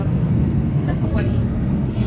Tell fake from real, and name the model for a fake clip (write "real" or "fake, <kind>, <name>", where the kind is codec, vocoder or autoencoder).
fake, codec, SNAC